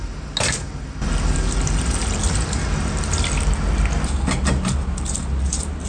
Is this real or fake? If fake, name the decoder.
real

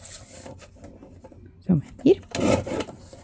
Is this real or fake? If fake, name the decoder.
real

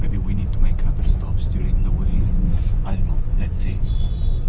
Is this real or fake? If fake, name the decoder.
fake, vocoder, Vocos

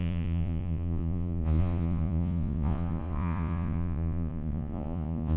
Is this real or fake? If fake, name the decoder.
fake, vocoder, Vocos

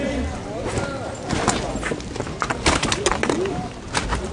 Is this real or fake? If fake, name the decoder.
real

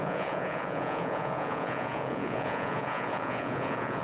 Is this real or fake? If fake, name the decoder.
fake, vocoder, Vocos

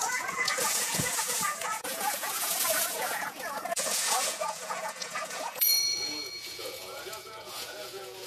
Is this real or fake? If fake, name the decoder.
fake, vocoder, Vocos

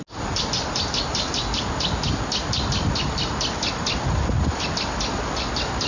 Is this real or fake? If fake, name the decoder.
real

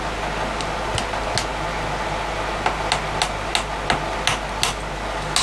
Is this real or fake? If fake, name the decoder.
real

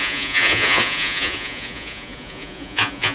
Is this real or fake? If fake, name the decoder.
fake, vocoder, Vocos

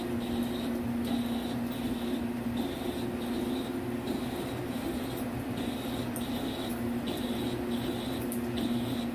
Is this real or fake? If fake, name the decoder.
real